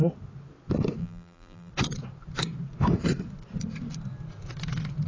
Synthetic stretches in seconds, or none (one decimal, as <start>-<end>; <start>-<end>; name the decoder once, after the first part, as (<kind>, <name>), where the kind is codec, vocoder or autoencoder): 1.0-1.7 (vocoder, BigVGAN v2)

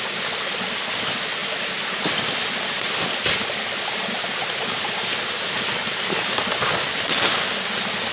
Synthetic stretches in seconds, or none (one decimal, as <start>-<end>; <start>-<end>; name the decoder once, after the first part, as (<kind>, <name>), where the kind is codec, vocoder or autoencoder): none

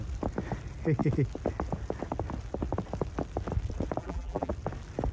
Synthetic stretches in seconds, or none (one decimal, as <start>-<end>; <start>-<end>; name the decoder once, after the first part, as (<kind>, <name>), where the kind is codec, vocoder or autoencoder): 4.0-4.5 (vocoder, BigVGAN v2)

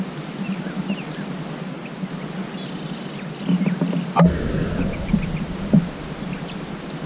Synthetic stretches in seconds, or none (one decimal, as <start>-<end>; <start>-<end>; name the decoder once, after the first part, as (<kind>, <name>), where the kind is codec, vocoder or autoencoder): none

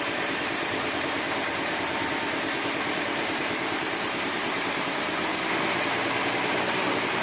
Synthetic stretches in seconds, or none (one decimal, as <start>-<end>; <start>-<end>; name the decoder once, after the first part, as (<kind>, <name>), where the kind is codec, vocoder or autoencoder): 0.0-5.3 (vocoder, BigVGAN v2); 6.3-7.2

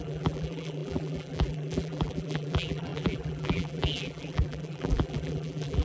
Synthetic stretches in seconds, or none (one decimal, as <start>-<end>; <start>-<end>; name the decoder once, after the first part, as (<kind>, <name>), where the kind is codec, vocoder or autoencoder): 0.0-5.8 (vocoder, BigVGAN v2)

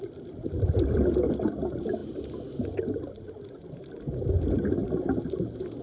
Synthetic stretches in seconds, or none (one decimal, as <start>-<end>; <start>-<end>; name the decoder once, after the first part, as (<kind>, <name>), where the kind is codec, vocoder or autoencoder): none

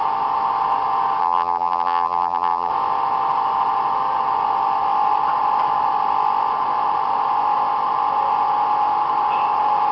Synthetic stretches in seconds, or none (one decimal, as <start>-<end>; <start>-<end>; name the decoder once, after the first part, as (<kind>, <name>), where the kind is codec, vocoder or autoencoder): 1.2-2.7 (vocoder, BigVGAN v2)